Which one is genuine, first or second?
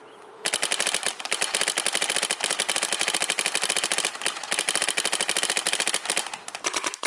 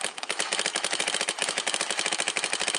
first